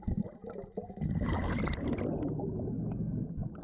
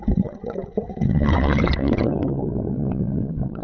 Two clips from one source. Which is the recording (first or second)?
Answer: first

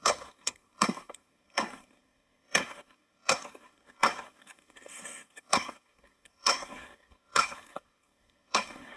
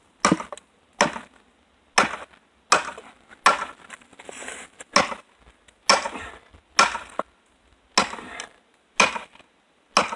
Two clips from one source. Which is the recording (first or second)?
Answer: second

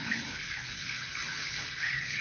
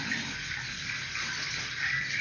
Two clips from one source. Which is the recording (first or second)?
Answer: second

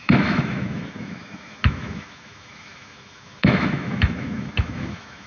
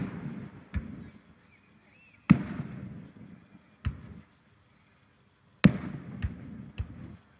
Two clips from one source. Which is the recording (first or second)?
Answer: second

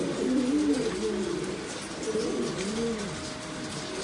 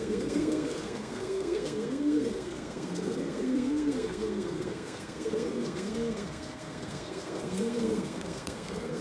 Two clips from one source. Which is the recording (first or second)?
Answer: first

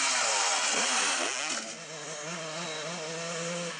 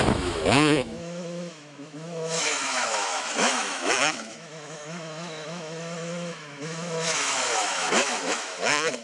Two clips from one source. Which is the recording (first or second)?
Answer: first